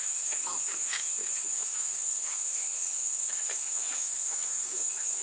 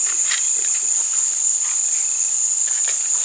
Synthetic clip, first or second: first